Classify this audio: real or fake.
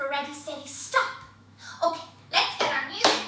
fake